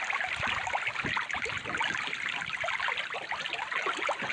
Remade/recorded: recorded